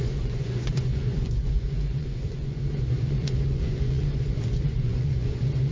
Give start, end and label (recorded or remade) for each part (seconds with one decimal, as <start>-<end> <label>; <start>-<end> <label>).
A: 0.0-5.7 remade